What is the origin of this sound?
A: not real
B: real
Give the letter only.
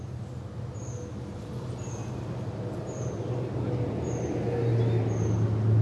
B